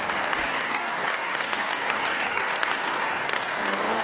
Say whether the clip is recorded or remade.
remade